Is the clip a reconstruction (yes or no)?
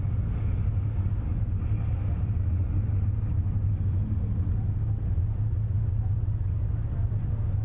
no